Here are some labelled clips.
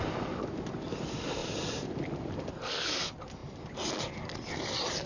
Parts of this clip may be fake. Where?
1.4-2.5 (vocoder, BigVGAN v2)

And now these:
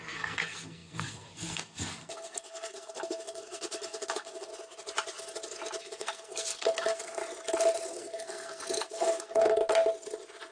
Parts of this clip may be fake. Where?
0.0-4.5 (codec, SNAC); 5.8-7.2; 7.9-9.6

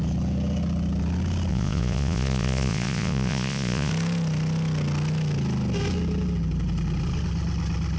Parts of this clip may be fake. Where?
1.5-3.9 (vocoder, Vocos)

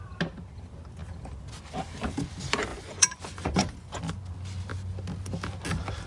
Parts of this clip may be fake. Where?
2.7-4.0 (vocoder, Vocos)

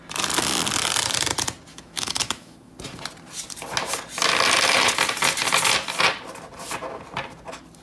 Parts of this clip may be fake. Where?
1.7-2.7 (autoencoder, DAC-VAE)

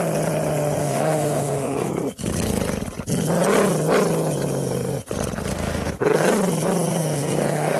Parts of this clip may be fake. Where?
0.8-1.9 (autoencoder, DAC-VAE); 5.5-6.3; 6.9-7.8

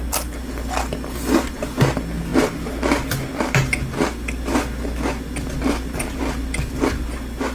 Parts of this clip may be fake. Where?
none

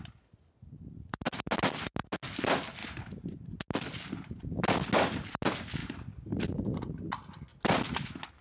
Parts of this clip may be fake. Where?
2.8-3.6 (vocoder, BigVGAN v2); 5.8-6.4